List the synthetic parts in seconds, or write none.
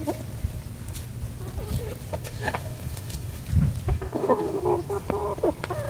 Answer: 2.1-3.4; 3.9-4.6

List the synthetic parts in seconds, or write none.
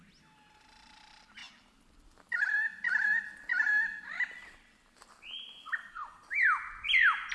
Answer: 5.8-6.3